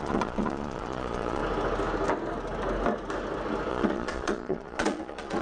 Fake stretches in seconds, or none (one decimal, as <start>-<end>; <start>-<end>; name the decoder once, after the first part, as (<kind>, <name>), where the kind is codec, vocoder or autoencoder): 0.0-1.4 (vocoder, Vocos); 3.7-5.4